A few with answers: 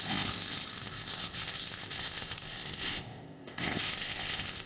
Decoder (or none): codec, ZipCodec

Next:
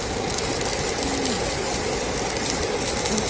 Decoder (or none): none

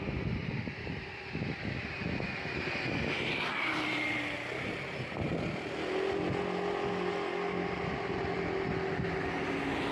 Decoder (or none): none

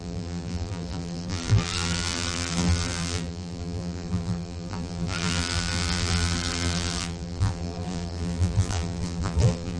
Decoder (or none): vocoder, BigVGAN v2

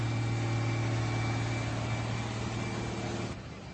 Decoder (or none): none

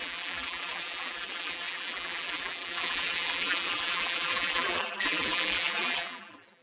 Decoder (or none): vocoder, BigVGAN v2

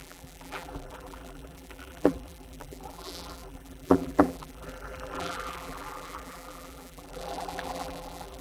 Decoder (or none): vocoder, BigVGAN v2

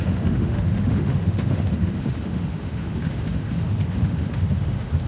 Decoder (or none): autoencoder, DAC-VAE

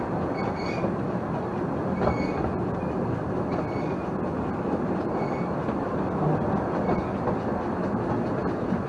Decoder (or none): none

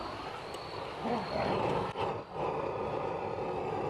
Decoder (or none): none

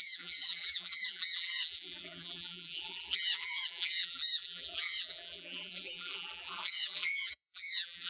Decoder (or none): vocoder, BigVGAN v2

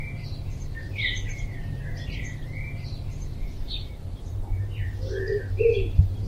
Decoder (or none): vocoder, BigVGAN v2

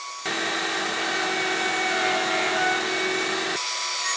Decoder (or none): none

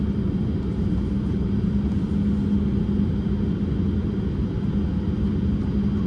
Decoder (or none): none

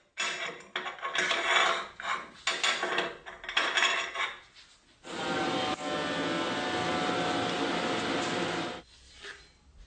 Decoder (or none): none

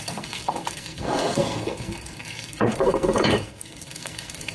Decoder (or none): codec, SNAC